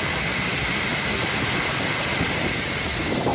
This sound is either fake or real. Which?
real